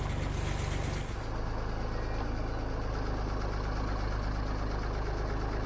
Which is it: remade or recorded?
recorded